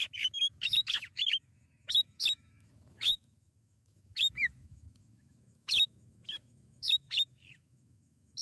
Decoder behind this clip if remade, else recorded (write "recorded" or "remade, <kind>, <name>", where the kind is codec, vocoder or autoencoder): remade, autoencoder, DAC-VAE